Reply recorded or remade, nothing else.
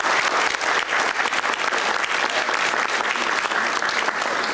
recorded